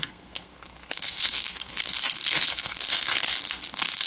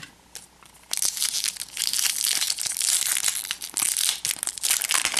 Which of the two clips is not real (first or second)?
first